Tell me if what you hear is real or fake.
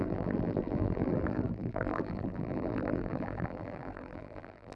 fake